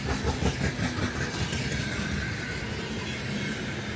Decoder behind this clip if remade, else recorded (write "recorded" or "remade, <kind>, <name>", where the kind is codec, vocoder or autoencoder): recorded